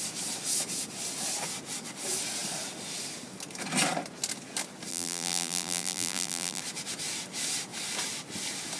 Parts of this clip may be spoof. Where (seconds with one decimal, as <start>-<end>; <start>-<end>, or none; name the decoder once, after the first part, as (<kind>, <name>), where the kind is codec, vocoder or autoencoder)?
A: 4.9-6.6 (vocoder, BigVGAN v2)